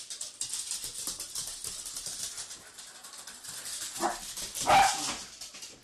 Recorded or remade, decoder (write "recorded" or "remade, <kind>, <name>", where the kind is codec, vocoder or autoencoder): recorded